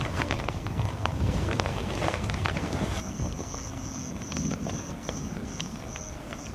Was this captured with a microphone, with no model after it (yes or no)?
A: no